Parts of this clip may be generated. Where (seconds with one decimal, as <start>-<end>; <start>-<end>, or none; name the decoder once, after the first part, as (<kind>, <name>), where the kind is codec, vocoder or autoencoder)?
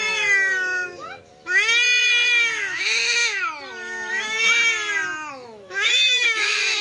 0.0-3.2 (autoencoder, DAC-VAE); 4.1-4.6; 5.3-6.8